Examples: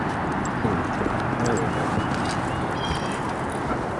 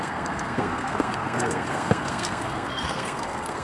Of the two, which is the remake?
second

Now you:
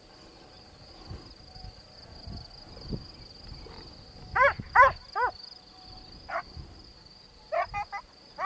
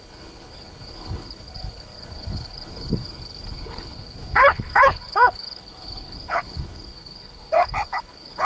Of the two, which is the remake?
second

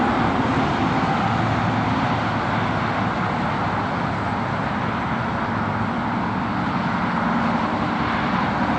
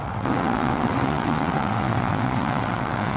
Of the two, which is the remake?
second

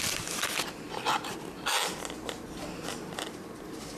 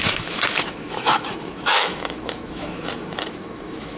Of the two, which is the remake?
second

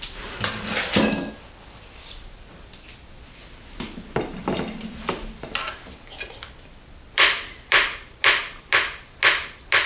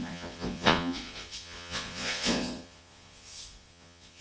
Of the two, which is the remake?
second